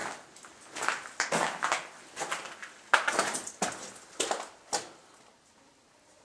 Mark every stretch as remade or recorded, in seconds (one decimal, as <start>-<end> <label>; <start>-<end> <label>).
0.0-6.2 recorded